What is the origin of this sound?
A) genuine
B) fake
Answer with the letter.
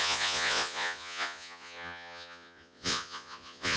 B